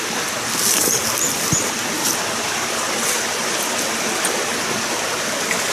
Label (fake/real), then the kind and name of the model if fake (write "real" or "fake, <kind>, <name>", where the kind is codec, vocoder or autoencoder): real